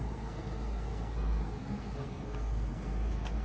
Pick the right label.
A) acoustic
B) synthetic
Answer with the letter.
B